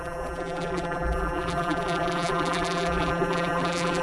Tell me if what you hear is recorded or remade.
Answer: remade